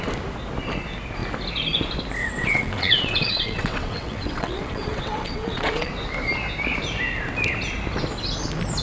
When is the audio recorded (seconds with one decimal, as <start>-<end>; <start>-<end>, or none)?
0.0-2.2; 5.9-8.8